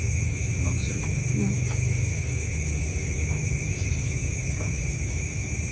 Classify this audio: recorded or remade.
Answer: remade